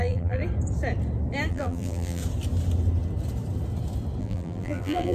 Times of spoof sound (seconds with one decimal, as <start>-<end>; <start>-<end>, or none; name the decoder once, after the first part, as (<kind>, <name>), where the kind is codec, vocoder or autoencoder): 0.0-0.4 (vocoder, BigVGAN v2); 1.5-2.2; 4.2-5.1